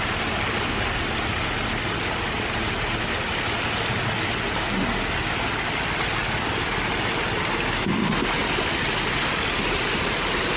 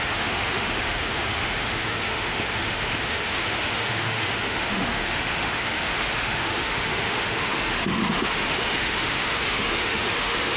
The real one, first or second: first